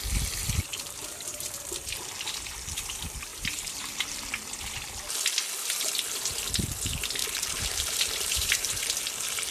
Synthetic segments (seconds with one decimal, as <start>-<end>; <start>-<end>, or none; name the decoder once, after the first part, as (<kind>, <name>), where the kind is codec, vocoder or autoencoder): 0.7-1.6 (vocoder, BigVGAN v2); 3.3-4.2; 7.2-8.7